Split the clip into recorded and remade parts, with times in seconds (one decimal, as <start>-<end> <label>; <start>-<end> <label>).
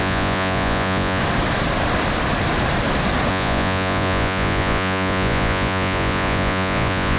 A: 0.0-1.2 remade; 1.2-3.3 recorded; 3.3-7.2 remade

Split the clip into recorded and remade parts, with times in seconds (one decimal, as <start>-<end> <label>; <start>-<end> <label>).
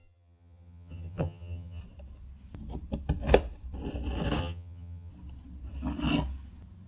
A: 0.0-1.8 remade; 1.8-4.4 recorded; 4.4-5.1 remade; 5.1-6.9 recorded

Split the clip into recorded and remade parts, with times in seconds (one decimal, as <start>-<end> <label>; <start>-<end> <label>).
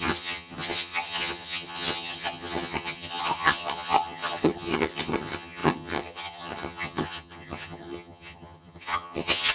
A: 0.0-9.5 remade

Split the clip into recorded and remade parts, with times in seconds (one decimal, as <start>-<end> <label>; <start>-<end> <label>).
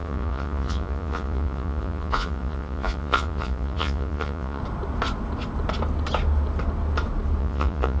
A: 0.0-4.6 remade; 4.6-7.4 recorded; 7.4-8.0 remade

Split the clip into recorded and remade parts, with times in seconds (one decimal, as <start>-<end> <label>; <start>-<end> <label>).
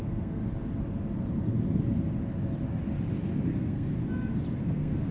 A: 0.0-0.4 remade; 0.4-3.5 recorded; 3.5-3.9 remade; 3.9-4.6 recorded; 4.6-5.1 remade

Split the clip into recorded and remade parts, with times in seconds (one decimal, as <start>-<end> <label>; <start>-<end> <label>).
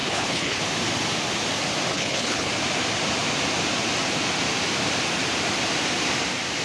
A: 0.0-0.6 remade; 0.6-1.9 recorded; 1.9-2.5 remade; 2.5-6.6 recorded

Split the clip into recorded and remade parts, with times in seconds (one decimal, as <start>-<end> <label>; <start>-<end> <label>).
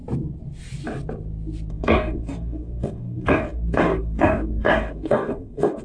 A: 0.0-1.7 recorded; 1.7-5.8 remade